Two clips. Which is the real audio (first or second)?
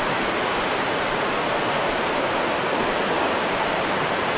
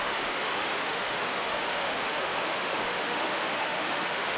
first